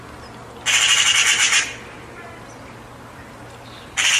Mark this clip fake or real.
real